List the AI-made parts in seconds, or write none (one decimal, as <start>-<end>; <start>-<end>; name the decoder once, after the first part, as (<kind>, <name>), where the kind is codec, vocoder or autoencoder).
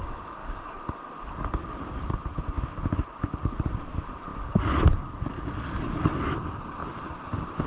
none